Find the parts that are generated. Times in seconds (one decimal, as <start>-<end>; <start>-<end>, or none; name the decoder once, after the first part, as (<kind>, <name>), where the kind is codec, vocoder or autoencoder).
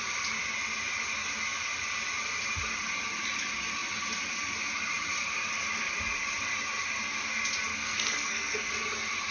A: 7.7-8.7 (codec, SNAC)